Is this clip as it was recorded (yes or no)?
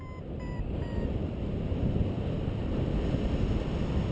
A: yes